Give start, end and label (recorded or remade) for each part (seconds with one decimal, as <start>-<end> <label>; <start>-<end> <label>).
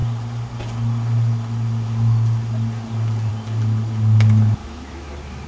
0.0-4.6 recorded; 4.6-5.1 remade; 5.1-5.5 recorded